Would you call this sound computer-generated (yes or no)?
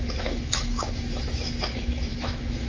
yes